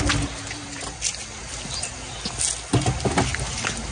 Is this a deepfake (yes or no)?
no